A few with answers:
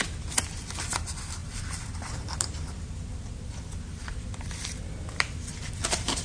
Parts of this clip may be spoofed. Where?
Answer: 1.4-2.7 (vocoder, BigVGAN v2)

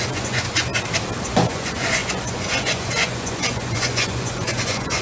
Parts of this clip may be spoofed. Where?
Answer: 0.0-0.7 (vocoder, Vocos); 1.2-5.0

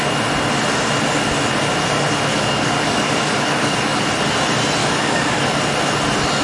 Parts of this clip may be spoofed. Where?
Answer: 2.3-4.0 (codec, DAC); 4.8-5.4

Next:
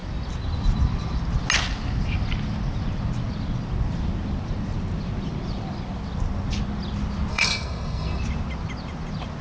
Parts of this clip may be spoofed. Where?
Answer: 7.3-8.2 (codec, SNAC)

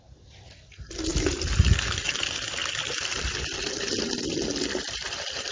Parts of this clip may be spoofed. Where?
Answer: none

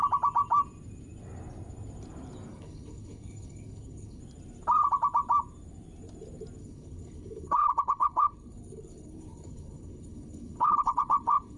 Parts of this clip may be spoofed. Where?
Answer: 2.5-4.2 (codec, HILCodec); 6.6-11.6